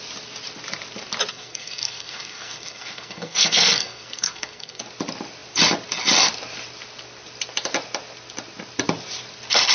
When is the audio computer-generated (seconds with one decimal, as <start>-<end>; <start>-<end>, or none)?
1.3-4.8